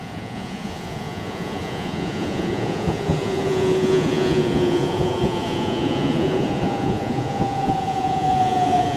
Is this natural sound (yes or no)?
no